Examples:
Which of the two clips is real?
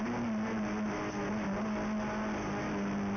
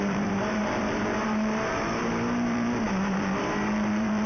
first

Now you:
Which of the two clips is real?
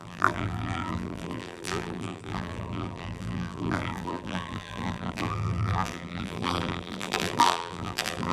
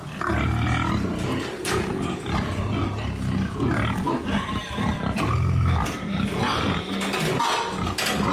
second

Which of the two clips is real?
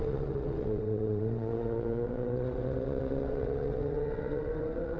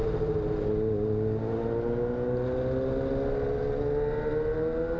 second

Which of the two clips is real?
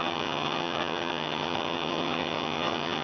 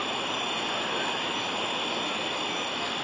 second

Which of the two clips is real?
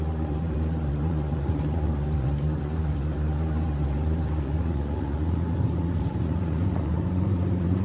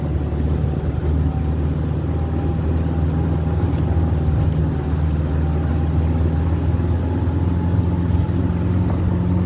second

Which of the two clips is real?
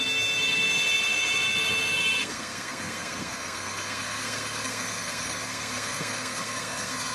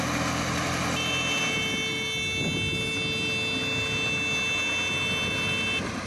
second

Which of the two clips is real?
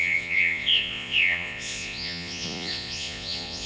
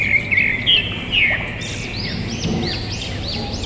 second